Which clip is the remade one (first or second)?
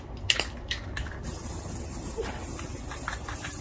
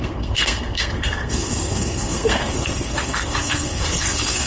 second